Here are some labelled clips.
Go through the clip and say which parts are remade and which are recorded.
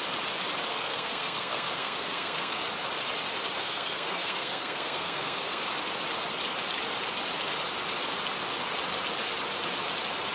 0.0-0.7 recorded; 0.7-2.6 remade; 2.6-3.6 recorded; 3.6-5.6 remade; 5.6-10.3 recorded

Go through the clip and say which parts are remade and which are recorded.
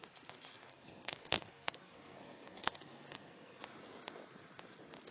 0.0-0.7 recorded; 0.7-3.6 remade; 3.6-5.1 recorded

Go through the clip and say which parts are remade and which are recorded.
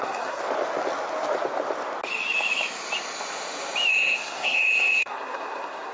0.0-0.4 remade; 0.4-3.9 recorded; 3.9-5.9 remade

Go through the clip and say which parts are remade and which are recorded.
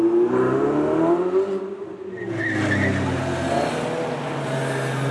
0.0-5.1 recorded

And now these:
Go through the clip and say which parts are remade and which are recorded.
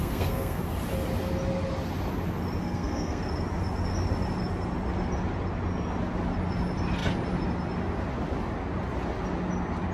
0.0-0.6 remade; 0.6-2.6 recorded; 2.6-3.2 remade; 3.2-9.9 recorded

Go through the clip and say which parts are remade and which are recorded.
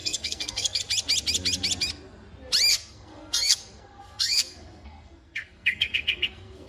0.0-0.8 remade; 0.8-2.7 recorded; 2.7-6.7 remade